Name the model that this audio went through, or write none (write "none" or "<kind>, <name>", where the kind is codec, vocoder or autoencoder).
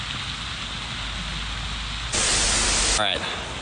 none